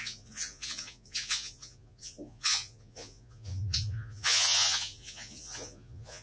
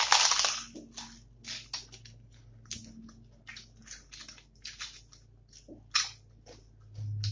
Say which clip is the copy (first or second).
first